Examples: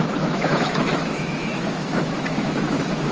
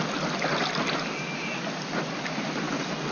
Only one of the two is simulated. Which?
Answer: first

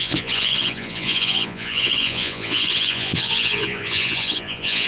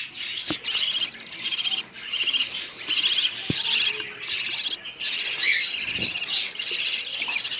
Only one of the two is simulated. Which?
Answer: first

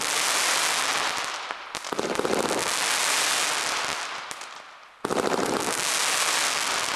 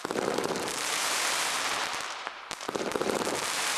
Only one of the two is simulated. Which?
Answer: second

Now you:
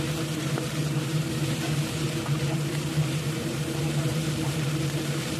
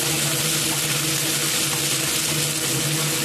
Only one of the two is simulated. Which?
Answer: first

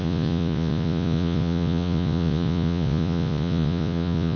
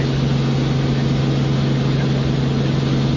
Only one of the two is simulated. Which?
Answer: first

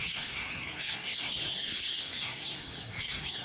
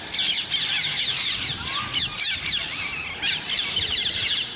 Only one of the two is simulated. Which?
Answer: first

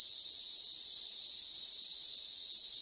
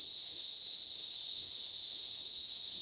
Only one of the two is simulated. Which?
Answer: second